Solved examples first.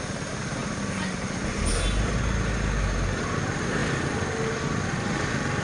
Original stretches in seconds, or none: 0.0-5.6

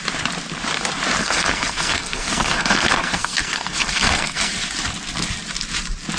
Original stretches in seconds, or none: 0.0-1.2; 4.5-6.2

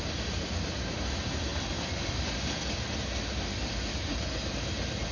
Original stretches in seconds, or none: 0.0-5.1

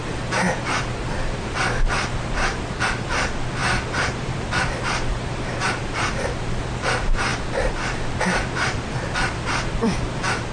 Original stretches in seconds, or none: 0.0-1.1; 7.3-8.2

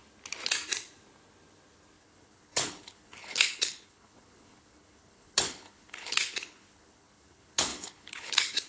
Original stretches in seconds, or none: 0.0-2.0

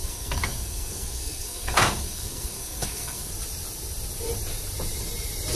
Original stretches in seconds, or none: 3.3-5.5

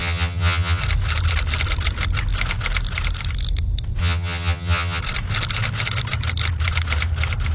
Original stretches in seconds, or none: 0.8-4.0; 5.0-7.5

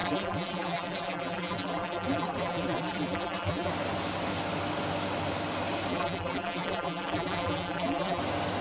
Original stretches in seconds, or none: 3.7-5.9; 8.2-8.6